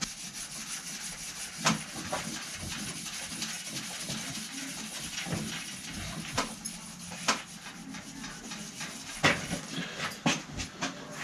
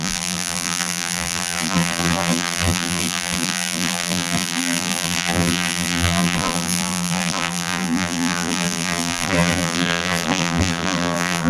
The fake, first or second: second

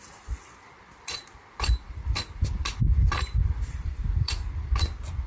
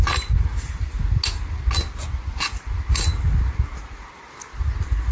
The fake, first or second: first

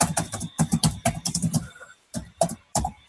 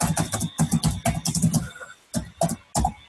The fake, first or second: first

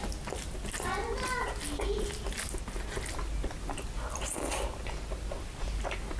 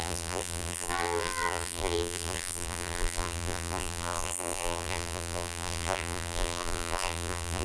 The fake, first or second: second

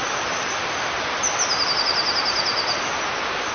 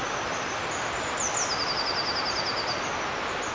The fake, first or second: first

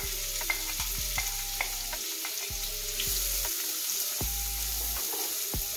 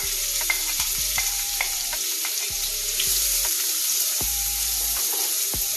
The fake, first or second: second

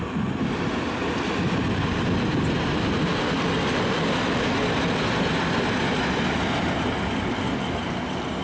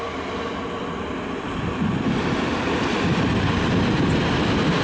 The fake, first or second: second